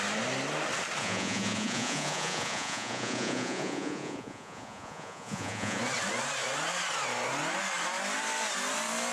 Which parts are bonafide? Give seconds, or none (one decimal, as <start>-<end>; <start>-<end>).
0.0-1.0; 5.8-9.1